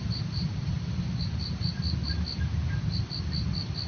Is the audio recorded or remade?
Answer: recorded